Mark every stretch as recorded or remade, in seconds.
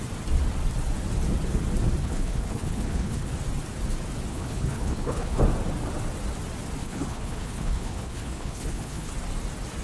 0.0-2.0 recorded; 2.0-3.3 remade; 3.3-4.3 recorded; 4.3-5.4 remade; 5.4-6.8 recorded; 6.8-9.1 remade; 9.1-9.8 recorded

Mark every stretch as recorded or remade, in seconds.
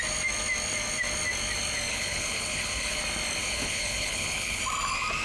0.0-1.9 recorded; 1.9-3.0 remade; 3.0-3.4 recorded; 3.4-4.6 remade; 4.6-5.2 recorded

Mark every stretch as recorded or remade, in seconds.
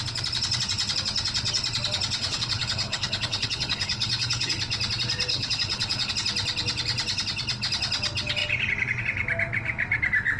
0.0-2.2 recorded; 2.2-4.5 remade; 4.5-5.3 recorded; 5.3-6.1 remade; 6.1-10.4 recorded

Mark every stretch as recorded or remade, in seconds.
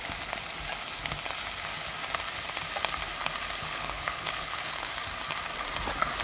0.0-3.6 recorded; 3.6-4.9 remade; 4.9-6.2 recorded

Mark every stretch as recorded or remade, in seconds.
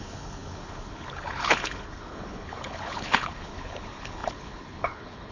0.0-5.3 remade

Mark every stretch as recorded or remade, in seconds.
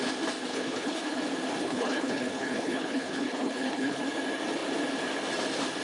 0.0-0.5 recorded; 0.5-1.2 remade; 1.2-1.6 recorded; 1.6-4.0 remade; 4.0-5.8 recorded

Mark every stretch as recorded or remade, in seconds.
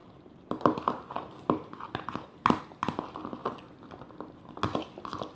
0.0-5.3 recorded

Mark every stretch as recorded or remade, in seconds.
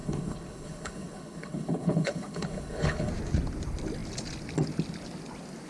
0.0-3.1 remade; 3.1-5.7 recorded